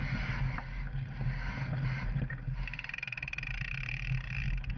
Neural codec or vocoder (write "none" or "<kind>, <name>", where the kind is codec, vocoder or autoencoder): none